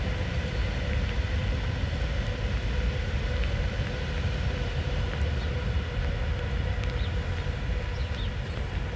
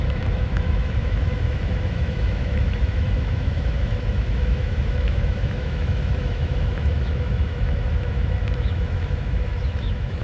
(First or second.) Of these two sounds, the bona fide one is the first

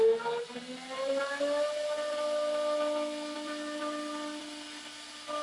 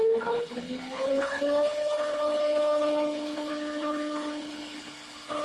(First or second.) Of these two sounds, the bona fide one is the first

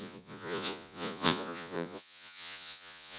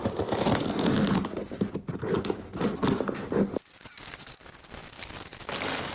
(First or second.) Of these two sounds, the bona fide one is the second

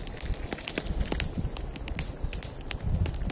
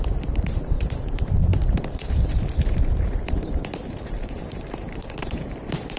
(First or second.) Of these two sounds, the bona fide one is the first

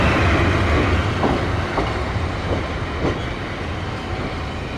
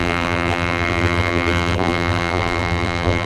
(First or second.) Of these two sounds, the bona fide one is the first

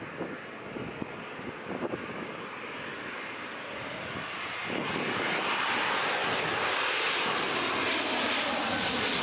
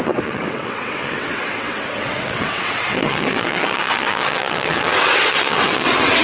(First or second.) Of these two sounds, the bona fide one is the first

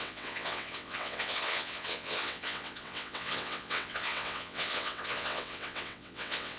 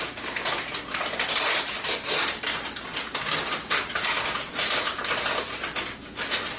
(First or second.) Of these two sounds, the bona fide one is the second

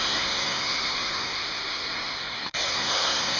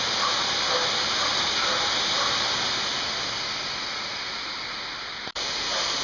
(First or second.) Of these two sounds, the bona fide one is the second